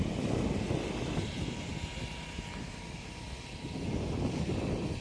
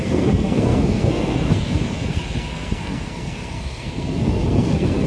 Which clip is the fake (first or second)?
second